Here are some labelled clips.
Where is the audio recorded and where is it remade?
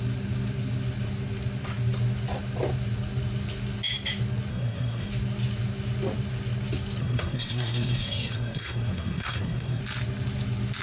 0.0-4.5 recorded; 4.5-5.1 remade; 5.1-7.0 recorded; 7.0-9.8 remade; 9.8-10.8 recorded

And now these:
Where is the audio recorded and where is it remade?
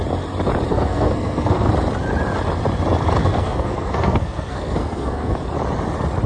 0.0-0.7 recorded; 0.7-1.7 remade; 1.7-3.2 recorded; 3.2-5.4 remade; 5.4-6.3 recorded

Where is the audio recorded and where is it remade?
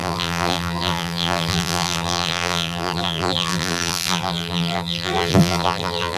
0.0-6.2 remade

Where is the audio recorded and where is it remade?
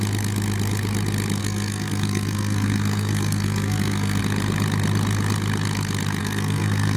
0.0-1.4 recorded; 1.4-4.2 remade; 4.2-6.2 recorded; 6.2-7.0 remade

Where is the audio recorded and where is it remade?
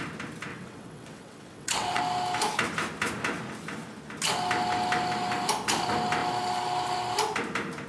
0.0-0.5 recorded; 0.5-2.0 remade; 2.0-7.9 recorded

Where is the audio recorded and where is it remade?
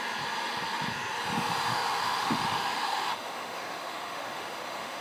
0.0-1.7 recorded; 1.7-5.0 remade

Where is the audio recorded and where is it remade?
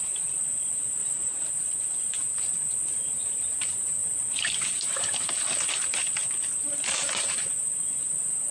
0.0-1.0 recorded; 1.0-1.5 remade; 1.5-8.5 recorded